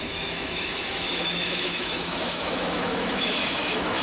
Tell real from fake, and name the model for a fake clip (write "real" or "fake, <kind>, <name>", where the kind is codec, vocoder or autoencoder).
fake, autoencoder, DAC-VAE